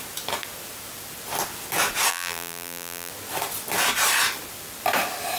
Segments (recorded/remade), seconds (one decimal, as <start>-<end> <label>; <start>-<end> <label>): 0.0-2.1 recorded; 2.1-3.1 remade; 3.1-5.4 recorded